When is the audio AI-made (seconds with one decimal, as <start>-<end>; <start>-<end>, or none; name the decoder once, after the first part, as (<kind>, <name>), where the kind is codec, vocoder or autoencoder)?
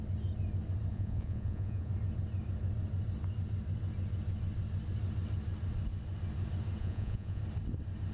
0.9-1.9 (vocoder, Vocos); 6.8-7.4